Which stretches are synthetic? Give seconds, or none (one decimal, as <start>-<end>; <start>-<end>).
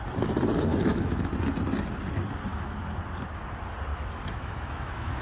0.7-1.3; 2.5-3.0; 3.9-5.2